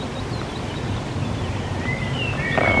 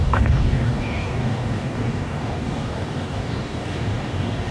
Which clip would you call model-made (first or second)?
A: second